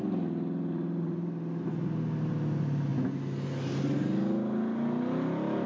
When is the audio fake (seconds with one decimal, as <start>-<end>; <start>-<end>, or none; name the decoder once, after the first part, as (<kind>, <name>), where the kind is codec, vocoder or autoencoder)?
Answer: none